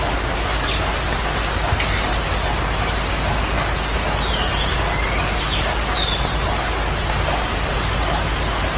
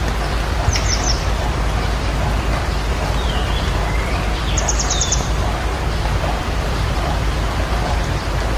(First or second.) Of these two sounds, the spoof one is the second